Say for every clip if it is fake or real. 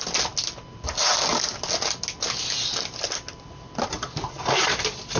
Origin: real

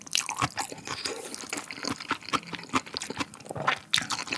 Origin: real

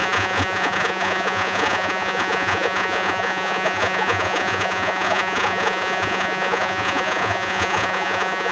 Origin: fake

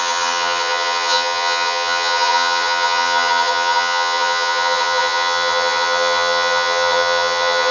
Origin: fake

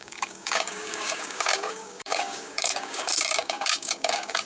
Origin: fake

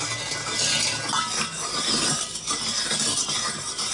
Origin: real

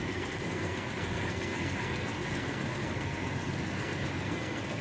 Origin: fake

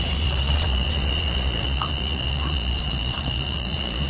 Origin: fake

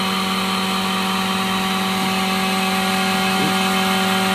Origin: real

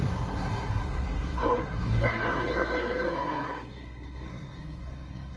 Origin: fake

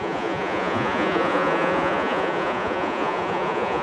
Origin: fake